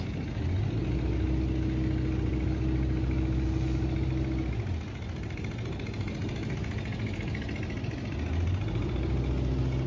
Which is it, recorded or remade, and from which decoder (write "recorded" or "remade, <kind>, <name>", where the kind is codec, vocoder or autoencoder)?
recorded